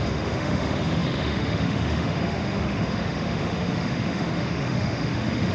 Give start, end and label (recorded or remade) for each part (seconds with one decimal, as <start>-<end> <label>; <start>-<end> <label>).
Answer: 0.0-5.5 remade